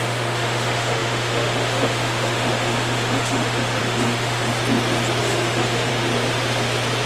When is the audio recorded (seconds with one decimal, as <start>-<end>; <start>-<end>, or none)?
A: 4.5-5.2; 5.9-7.1